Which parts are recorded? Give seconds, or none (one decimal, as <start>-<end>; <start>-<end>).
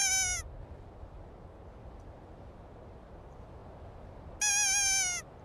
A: 0.0-5.4